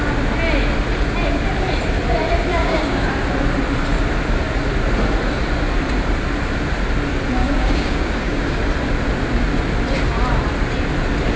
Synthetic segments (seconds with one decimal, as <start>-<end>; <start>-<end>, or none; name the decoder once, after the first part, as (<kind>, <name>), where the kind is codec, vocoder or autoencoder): 2.6-3.1 (codec, DAC); 7.4-8.6